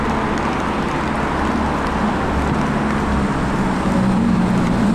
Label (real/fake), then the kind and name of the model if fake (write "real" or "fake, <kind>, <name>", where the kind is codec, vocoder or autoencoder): real